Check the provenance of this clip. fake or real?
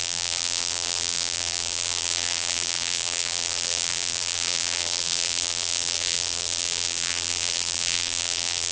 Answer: fake